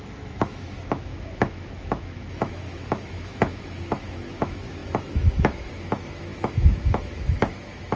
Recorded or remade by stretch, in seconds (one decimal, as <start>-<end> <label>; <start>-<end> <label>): 0.0-8.0 remade